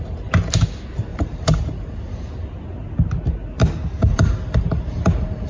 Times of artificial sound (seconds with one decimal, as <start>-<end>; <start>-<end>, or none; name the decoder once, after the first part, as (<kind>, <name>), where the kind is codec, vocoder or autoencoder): 1.1-2.3 (vocoder, BigVGAN v2); 4.1-5.5